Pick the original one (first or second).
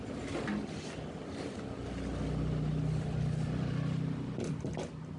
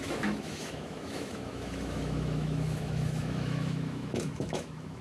first